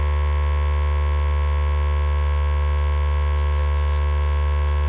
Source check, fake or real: real